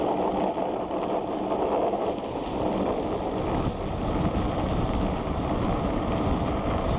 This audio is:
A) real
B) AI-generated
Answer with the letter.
A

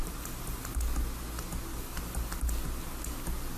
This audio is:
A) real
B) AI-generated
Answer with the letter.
A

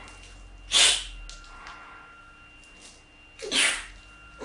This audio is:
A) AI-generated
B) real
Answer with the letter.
B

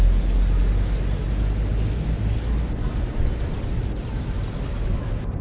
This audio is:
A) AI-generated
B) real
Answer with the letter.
B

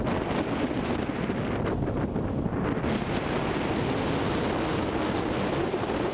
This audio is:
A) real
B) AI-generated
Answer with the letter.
A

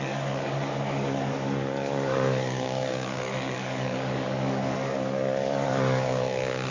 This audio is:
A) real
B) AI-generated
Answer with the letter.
B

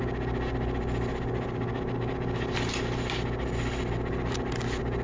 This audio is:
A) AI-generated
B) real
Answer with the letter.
B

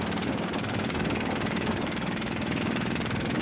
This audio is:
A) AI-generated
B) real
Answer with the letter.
A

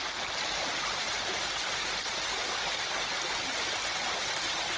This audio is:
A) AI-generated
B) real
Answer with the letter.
B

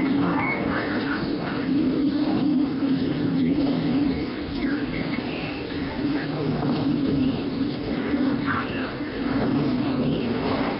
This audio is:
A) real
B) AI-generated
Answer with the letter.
B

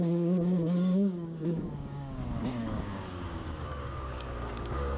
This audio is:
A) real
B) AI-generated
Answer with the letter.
B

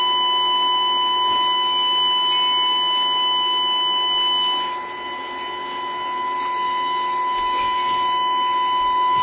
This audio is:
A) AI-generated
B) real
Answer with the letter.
B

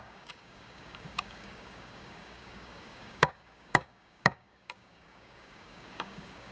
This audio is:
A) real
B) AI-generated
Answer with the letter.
B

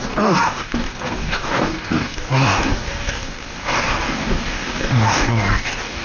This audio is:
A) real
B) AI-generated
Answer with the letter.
B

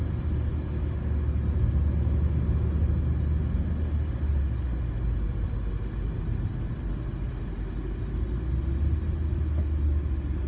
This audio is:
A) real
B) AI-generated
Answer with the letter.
A